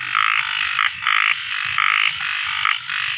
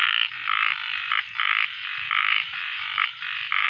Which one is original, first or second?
first